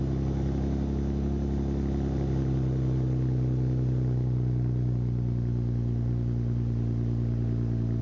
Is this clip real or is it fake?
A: real